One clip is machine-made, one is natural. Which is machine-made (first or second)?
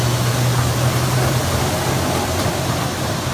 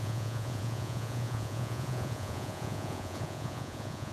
second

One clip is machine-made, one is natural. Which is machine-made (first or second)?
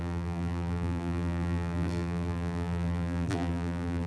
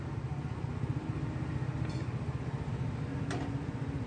first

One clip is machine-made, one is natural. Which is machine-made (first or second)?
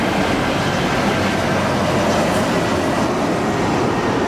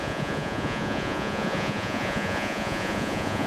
second